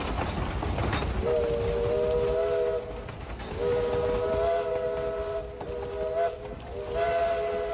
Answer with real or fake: real